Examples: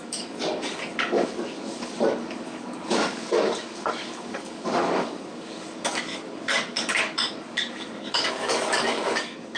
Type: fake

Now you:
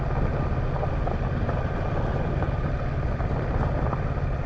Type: real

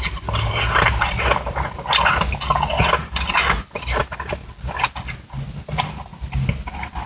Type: real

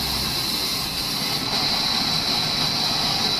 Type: real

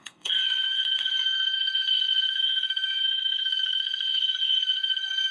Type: fake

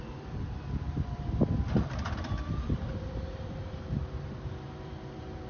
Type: fake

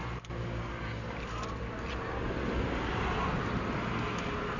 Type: real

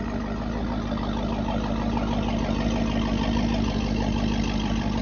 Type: real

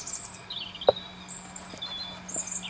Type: real